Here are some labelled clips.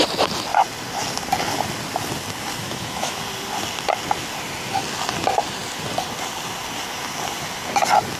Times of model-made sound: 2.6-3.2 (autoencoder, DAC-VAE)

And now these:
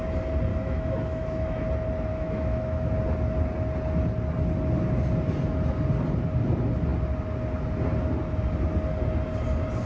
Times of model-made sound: 0.5-1.6 (autoencoder, DAC-VAE); 2.1-2.9

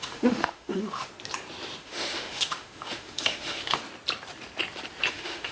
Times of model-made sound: 0.0-1.1 (autoencoder, DAC-VAE); 1.8-3.8; 5.1-5.5

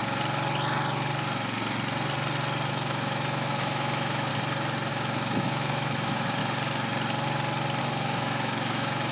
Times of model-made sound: 2.7-4.3 (autoencoder, DAC-VAE); 4.9-6.4; 7.8-9.1

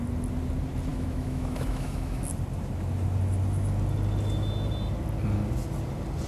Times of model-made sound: 0.9-2.2 (autoencoder, DAC-VAE)